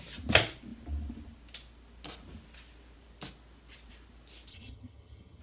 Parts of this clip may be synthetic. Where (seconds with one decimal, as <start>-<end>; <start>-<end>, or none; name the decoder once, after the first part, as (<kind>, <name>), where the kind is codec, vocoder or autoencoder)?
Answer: 4.5-5.4 (vocoder, HiFi-GAN)